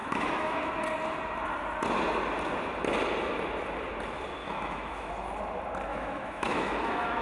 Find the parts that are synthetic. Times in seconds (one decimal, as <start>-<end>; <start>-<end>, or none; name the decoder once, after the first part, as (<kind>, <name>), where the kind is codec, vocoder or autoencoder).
0.0-0.7 (autoencoder, DAC-VAE); 4.4-5.1; 5.9-7.2

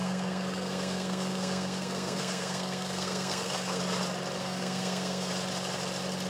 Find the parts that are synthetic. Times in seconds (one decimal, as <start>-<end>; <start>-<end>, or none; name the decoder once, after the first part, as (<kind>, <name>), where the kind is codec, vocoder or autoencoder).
0.0-3.8 (codec, SNAC); 4.4-5.3

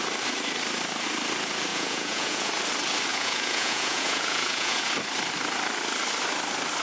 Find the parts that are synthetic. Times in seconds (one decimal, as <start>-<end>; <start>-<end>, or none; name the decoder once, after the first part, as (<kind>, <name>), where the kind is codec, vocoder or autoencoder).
1.7-2.5 (vocoder, Vocos); 3.1-4.9

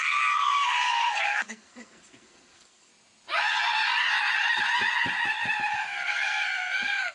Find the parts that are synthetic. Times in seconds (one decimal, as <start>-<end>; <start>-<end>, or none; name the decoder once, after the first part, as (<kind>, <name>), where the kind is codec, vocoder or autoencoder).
0.0-2.9 (codec, SNAC); 5.7-7.1